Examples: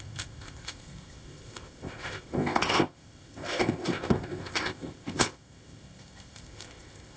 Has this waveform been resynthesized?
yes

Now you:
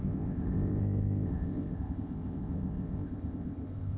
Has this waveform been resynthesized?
yes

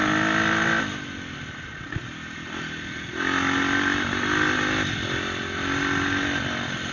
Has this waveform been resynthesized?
no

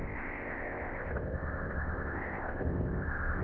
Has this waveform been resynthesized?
yes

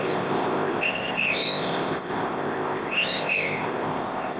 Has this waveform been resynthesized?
yes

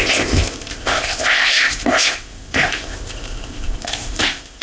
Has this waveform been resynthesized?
yes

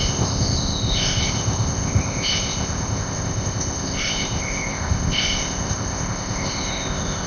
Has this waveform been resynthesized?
yes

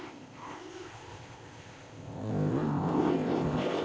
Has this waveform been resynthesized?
yes